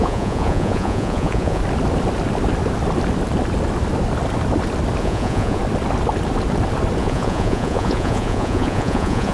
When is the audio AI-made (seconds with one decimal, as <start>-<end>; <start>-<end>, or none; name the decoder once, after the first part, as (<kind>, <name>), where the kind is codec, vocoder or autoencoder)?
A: 0.0-1.6 (vocoder, Vocos); 5.0-5.6; 7.0-9.3